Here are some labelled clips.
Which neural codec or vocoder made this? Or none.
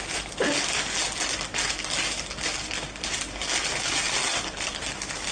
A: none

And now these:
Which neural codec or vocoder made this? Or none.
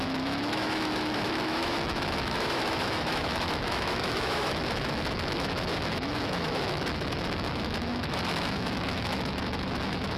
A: autoencoder, DAC-VAE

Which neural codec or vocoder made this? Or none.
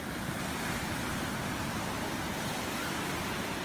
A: none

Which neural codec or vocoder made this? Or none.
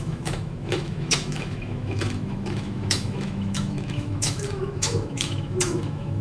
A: autoencoder, DAC-VAE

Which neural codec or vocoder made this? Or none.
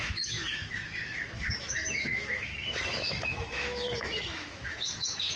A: autoencoder, DAC-VAE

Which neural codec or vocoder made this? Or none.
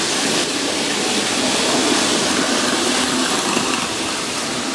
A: none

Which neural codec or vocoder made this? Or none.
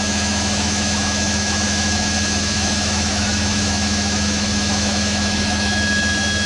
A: autoencoder, DAC-VAE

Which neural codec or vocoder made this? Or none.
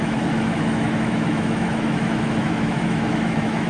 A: autoencoder, DAC-VAE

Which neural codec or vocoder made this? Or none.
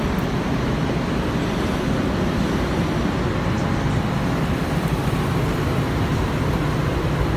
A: none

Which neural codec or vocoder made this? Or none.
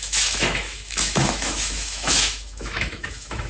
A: autoencoder, DAC-VAE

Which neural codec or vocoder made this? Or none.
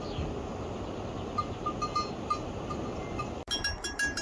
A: none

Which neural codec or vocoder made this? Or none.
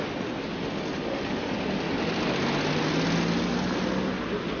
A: none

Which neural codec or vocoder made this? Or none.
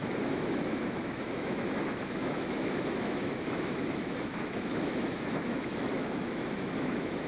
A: autoencoder, DAC-VAE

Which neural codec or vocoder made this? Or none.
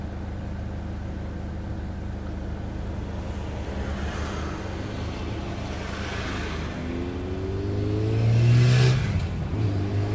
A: none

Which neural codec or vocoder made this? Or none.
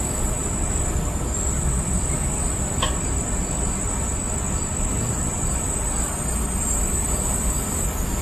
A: none